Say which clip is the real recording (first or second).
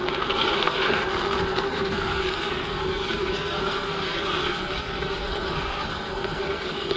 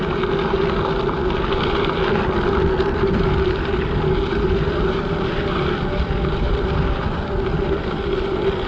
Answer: second